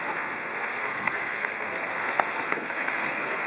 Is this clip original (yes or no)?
no